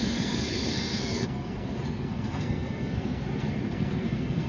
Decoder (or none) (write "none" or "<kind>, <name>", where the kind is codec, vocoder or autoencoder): codec, SNAC